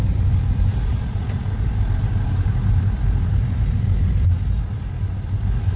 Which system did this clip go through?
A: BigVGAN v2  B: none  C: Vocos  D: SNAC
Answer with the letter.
B